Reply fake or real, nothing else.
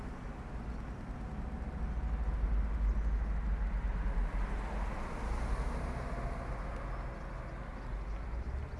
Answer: real